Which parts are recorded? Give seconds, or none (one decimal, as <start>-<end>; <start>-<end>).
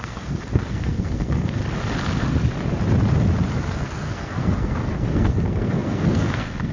1.6-3.7